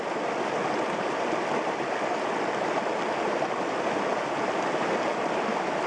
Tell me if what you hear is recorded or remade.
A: recorded